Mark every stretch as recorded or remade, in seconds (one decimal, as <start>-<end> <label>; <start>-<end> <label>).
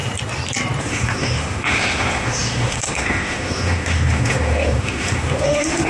0.0-0.8 recorded; 0.8-5.9 remade